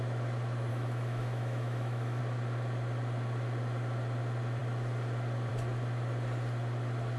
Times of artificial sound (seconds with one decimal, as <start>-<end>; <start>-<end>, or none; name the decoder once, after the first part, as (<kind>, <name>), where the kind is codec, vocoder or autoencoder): 0.7-2.2 (autoencoder, DAC-VAE)

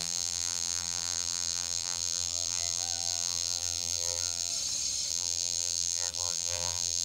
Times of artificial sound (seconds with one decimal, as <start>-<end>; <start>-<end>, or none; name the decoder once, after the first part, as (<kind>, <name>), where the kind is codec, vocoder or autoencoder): 0.0-4.5 (vocoder, BigVGAN v2); 5.1-7.0

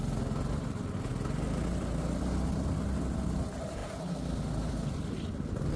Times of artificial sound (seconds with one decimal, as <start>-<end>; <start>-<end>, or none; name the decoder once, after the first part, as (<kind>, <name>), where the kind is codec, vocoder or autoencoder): none

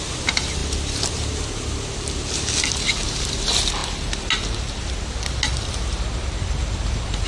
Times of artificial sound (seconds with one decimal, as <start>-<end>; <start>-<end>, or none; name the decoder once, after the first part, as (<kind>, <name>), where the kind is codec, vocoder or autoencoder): none